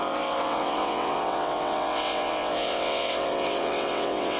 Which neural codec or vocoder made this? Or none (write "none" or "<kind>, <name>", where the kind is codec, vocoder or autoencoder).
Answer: vocoder, WaveNeXt